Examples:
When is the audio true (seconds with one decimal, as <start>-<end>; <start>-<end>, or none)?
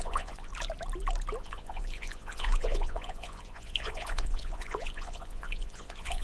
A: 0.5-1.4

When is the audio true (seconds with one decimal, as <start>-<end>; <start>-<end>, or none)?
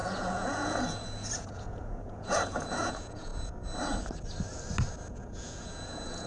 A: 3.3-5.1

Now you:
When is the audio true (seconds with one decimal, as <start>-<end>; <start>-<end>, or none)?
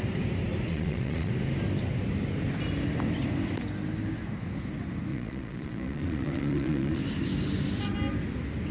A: 0.0-0.7; 1.3-5.1; 7.0-8.7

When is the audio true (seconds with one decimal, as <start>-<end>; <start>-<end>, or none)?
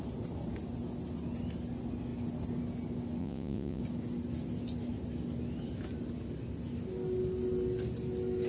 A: 0.0-3.2; 3.8-8.5